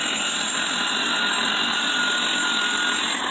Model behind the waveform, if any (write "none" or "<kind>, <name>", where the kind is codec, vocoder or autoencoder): none